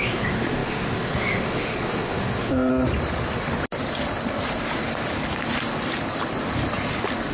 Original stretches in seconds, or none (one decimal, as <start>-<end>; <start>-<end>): 2.7-7.3